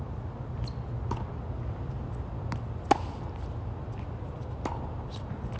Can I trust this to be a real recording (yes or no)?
yes